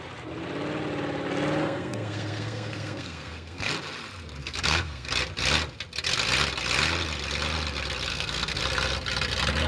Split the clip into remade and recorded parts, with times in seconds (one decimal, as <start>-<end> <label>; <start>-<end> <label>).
0.0-1.6 recorded; 1.6-3.7 remade; 3.7-4.4 recorded; 4.4-5.1 remade; 5.1-8.1 recorded; 8.1-8.6 remade; 8.6-9.7 recorded